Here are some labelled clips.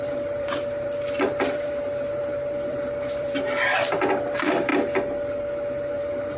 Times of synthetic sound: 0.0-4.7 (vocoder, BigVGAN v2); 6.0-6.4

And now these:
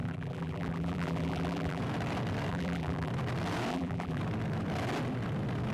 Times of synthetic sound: 0.0-1.8 (vocoder, BigVGAN v2); 2.5-3.1; 3.7-4.2